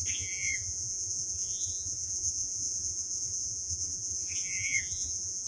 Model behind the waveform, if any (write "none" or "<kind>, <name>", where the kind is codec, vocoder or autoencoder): vocoder, Vocos